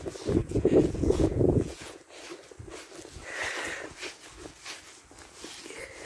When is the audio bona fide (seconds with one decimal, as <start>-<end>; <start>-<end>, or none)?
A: 0.0-0.4; 2.0-6.1